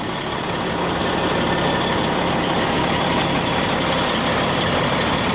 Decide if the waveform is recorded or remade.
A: recorded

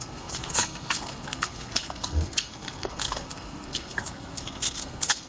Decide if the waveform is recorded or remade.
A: remade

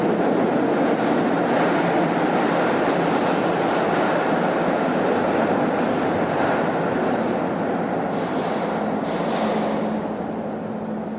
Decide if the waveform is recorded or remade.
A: recorded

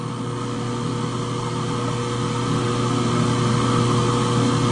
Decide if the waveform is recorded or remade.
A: recorded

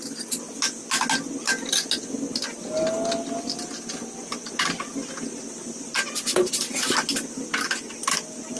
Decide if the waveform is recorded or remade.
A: recorded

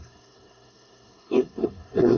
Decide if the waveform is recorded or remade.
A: remade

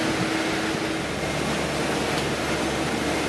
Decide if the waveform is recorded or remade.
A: recorded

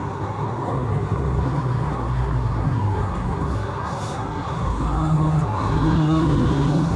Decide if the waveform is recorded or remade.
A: remade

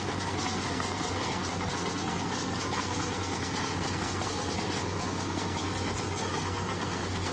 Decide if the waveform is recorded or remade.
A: remade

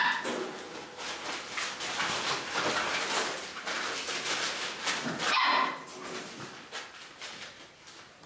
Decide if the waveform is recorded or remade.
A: recorded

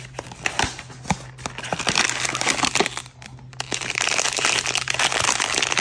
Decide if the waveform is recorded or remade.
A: recorded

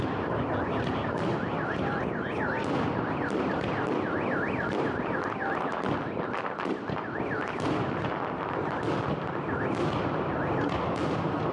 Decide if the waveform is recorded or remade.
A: recorded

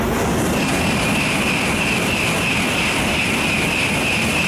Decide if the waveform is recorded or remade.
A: recorded